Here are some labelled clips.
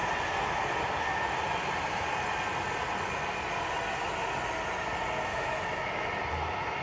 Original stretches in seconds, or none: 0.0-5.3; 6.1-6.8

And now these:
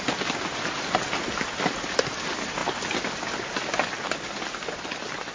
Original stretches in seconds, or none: 0.0-5.3

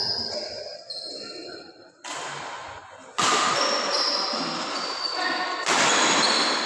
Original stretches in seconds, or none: 0.0-6.7

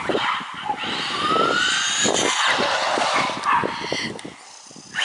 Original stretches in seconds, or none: 0.0-5.0

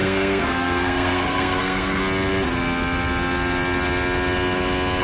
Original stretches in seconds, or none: 2.0-5.0

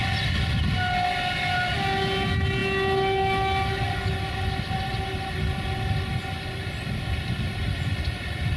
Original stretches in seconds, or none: 0.0-8.6

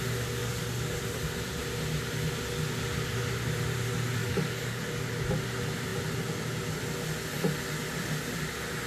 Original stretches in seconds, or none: 0.0-0.4; 1.0-4.2; 4.8-8.9

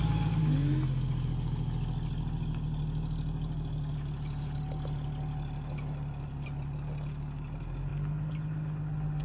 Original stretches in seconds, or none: 0.0-9.2